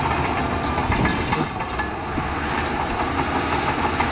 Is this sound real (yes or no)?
yes